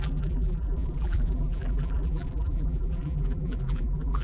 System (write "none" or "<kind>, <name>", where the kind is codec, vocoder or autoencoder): vocoder, BigVGAN v2